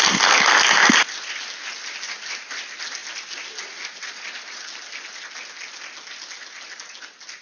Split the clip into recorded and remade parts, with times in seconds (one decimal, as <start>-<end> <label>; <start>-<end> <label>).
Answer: 0.0-7.4 recorded